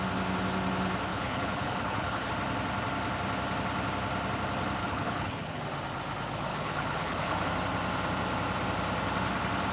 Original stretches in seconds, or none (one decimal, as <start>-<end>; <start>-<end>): 0.0-1.1; 2.3-4.8; 5.6-6.5; 7.5-9.7